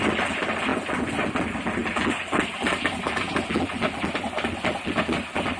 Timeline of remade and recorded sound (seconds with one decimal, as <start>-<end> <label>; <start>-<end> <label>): 0.0-5.6 recorded

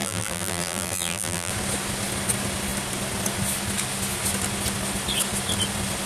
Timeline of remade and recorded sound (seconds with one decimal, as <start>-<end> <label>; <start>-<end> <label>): 0.0-1.5 remade; 1.5-6.1 recorded